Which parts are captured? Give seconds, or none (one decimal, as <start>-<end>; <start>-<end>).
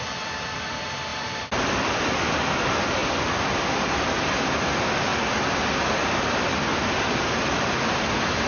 3.0-4.3